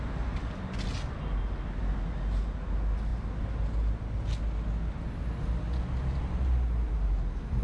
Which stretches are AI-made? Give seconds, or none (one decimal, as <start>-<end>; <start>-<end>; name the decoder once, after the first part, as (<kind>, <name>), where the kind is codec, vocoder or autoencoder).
none